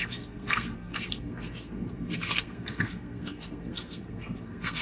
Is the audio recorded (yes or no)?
no